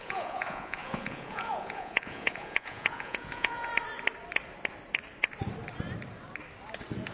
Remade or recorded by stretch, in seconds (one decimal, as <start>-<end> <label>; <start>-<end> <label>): 0.0-3.7 remade; 3.7-7.1 recorded